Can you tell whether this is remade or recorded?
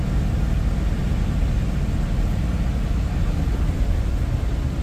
recorded